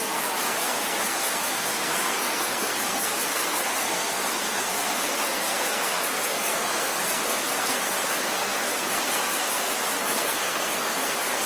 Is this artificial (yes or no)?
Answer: yes